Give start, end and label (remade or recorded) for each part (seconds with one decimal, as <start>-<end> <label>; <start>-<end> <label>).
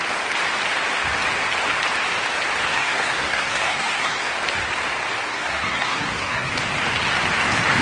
0.0-2.7 recorded; 2.7-4.3 remade; 4.3-5.3 recorded; 5.3-6.5 remade; 6.5-7.8 recorded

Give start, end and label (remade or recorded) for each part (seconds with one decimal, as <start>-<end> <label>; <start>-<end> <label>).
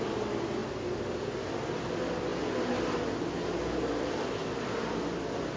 0.0-5.6 recorded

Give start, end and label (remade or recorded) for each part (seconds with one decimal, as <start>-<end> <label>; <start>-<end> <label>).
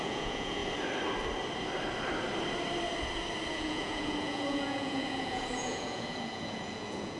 0.0-0.6 remade; 0.6-3.5 recorded; 3.5-7.2 remade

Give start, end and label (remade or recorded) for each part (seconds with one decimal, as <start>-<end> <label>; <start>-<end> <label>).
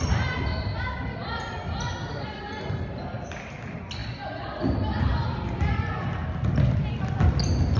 0.0-7.8 recorded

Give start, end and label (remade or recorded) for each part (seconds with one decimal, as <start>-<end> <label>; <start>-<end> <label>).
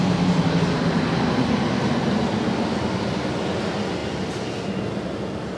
0.0-5.6 recorded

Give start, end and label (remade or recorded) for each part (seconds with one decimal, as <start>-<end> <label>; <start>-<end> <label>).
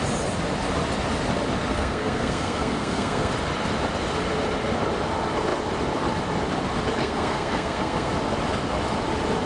0.0-1.7 recorded; 1.7-3.3 remade; 3.3-7.0 recorded; 7.0-8.1 remade; 8.1-9.5 recorded